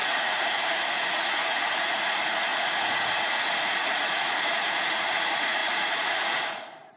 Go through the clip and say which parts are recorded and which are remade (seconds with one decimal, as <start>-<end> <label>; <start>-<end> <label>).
0.0-7.0 remade